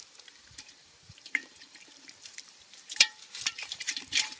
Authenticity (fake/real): fake